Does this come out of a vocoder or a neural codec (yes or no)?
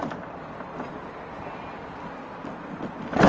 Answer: no